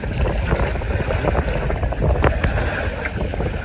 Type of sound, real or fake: real